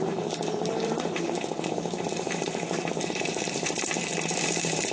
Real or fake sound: fake